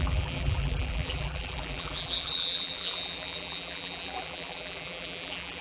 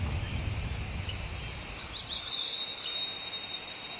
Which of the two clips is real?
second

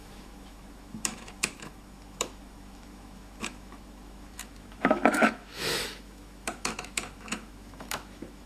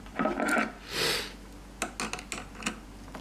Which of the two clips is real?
second